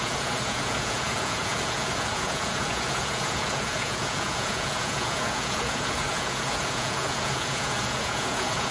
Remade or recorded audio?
remade